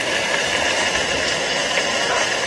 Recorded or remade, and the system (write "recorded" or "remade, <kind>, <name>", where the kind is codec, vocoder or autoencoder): remade, vocoder, BigVGAN v2